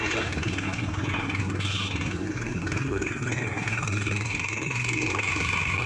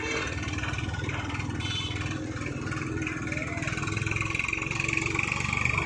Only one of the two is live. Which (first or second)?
second